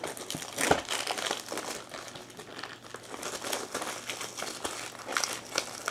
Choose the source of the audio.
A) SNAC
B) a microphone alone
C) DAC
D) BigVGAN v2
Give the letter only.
B